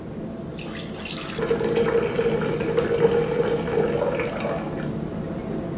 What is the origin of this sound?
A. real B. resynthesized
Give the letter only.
A